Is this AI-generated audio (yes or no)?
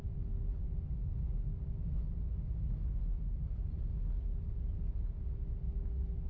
no